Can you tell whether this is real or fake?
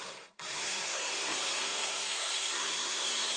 fake